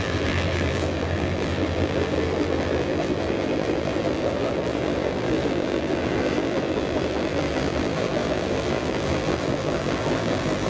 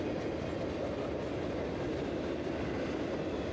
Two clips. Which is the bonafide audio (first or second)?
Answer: second